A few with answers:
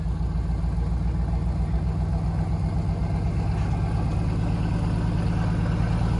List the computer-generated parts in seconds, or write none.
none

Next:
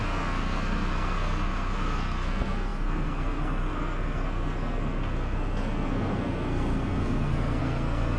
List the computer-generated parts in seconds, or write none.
0.0-8.2 (codec, SNAC)

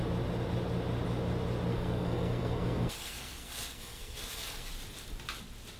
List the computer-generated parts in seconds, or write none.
1.7-4.7 (codec, SNAC)

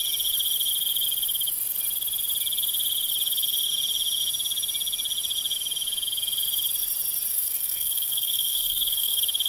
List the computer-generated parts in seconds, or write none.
7.3-9.5 (codec, SNAC)

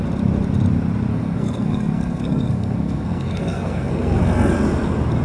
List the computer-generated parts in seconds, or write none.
1.1-4.2 (codec, SNAC)

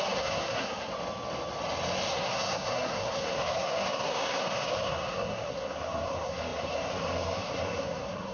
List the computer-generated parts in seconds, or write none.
0.0-0.9 (codec, SNAC); 2.1-8.3

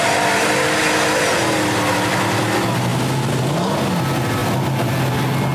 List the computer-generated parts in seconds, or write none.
none